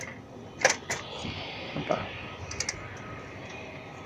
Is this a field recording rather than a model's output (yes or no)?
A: yes